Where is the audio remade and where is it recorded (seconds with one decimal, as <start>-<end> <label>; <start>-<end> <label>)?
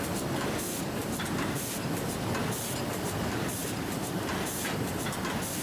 0.0-1.0 recorded; 1.0-2.1 remade; 2.1-3.6 recorded; 3.6-4.9 remade; 4.9-5.6 recorded